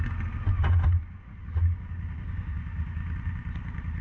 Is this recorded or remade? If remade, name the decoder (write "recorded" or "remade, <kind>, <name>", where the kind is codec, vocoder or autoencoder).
recorded